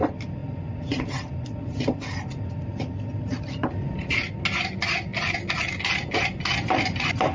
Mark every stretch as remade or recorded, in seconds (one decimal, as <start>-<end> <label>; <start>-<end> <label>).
0.0-7.3 recorded

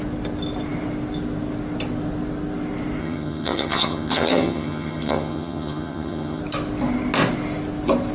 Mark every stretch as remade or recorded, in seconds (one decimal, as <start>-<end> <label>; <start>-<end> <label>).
0.0-3.0 recorded; 3.0-6.4 remade; 6.4-8.1 recorded

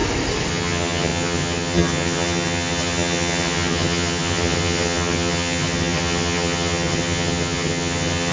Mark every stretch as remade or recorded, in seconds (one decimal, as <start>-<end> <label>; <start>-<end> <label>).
0.0-0.5 recorded; 0.5-8.3 remade

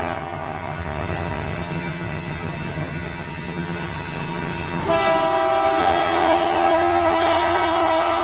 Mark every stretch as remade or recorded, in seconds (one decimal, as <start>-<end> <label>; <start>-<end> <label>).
0.0-4.8 remade; 4.8-5.8 recorded; 5.8-8.2 remade

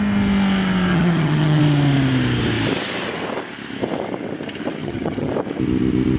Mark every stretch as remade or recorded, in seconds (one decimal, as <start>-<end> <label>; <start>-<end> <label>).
0.0-0.9 recorded; 0.9-1.6 remade; 1.6-4.8 recorded; 4.8-5.3 remade; 5.3-6.2 recorded

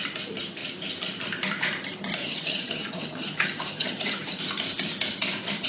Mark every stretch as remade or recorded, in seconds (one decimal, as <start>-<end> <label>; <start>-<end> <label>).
0.0-2.2 recorded; 2.2-4.4 remade; 4.4-5.7 recorded

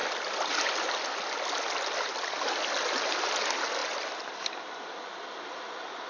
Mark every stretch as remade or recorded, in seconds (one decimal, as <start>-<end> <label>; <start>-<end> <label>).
0.0-6.1 recorded